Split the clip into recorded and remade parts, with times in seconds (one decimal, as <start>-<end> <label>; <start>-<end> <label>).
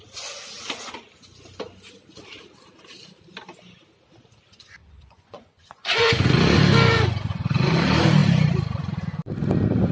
0.0-4.8 recorded; 4.8-6.1 remade; 6.1-6.9 recorded; 6.9-7.8 remade; 7.8-9.9 recorded